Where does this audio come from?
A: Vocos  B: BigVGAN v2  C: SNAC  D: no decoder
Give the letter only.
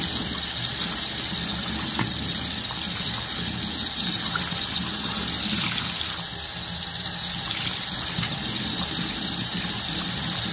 D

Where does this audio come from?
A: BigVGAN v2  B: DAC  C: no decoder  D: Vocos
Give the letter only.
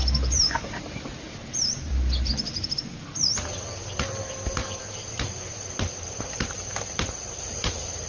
C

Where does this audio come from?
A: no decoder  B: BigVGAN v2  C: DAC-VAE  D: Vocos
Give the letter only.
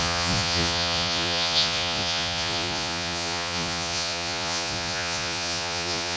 D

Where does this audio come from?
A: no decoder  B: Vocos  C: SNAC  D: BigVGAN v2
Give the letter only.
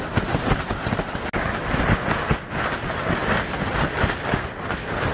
A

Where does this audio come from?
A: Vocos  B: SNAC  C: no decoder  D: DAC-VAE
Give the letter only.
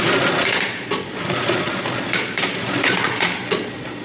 A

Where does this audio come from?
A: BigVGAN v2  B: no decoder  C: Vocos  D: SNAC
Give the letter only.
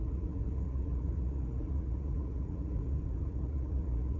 C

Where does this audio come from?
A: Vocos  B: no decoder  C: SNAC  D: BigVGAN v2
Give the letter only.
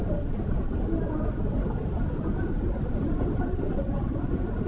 B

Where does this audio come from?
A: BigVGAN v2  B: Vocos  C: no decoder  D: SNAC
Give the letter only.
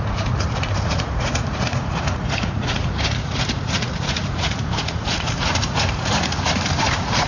B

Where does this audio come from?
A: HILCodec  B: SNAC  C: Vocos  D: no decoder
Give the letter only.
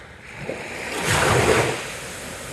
D